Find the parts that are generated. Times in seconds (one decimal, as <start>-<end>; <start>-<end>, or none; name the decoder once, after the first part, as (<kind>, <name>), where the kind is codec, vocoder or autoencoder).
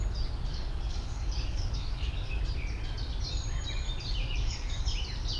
0.5-2.4 (codec, DAC); 4.2-4.8